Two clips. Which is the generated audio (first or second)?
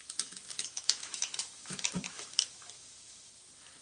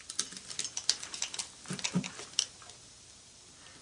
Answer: first